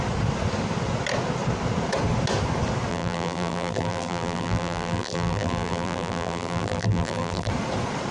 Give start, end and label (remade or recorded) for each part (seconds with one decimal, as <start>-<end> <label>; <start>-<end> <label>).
0.0-2.9 recorded; 2.9-7.5 remade; 7.5-8.1 recorded